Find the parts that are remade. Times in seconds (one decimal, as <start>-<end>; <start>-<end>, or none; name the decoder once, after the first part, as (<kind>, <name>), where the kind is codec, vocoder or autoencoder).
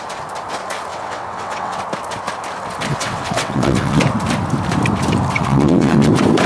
0.9-1.8 (vocoder, WaveNeXt); 2.9-4.0; 5.4-6.1